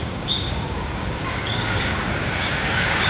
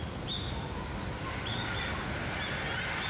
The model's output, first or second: first